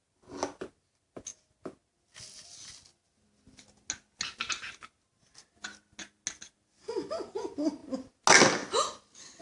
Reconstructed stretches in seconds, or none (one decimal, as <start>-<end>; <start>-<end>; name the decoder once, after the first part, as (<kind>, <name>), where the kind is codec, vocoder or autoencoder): none